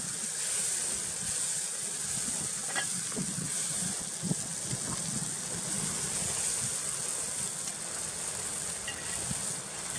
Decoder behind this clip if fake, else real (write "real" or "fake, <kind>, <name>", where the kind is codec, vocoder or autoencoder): real